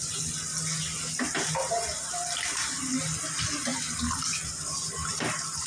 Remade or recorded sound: recorded